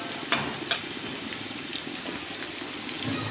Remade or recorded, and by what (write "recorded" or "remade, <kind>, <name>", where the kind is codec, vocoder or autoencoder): recorded